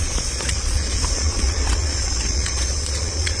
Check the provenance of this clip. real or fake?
fake